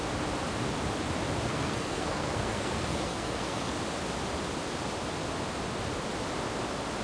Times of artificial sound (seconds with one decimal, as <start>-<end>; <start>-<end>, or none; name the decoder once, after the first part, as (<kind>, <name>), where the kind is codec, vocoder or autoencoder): 1.5-3.7 (codec, SNAC)